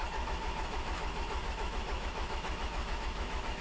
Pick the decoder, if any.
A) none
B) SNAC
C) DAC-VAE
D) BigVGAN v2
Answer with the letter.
C